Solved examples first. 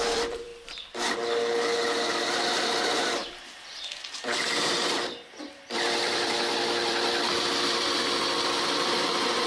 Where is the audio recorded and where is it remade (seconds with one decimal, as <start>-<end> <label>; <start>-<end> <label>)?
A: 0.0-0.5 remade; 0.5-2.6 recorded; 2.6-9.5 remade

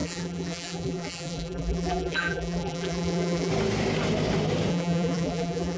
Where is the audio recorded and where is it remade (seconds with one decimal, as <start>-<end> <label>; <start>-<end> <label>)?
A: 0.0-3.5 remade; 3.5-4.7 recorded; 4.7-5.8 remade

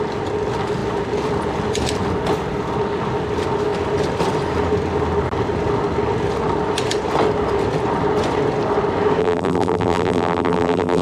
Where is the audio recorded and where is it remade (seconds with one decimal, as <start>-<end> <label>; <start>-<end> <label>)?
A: 0.0-9.2 recorded; 9.2-11.0 remade

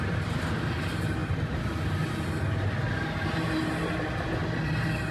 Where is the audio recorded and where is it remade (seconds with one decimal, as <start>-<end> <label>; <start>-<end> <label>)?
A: 0.0-5.1 recorded

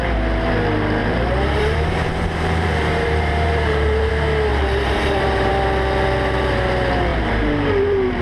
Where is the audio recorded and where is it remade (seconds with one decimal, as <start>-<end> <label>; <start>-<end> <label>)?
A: 0.0-1.0 recorded; 1.0-4.1 remade; 4.1-4.5 recorded; 4.5-5.5 remade; 5.5-7.1 recorded; 7.1-8.2 remade

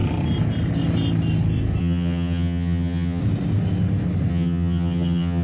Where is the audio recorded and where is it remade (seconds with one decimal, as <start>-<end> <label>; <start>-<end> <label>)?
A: 0.0-1.8 recorded; 1.8-3.2 remade; 3.2-4.3 recorded; 4.3-5.4 remade

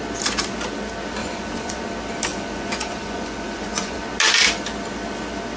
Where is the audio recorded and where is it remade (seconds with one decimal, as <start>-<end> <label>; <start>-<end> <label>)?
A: 0.0-1.2 recorded; 1.2-1.8 remade; 1.8-2.3 recorded; 2.3-4.0 remade; 4.0-5.6 recorded